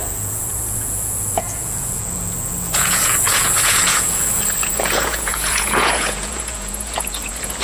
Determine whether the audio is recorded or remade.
remade